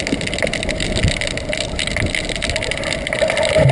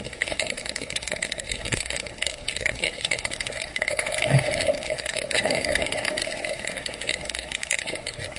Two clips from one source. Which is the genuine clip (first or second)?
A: first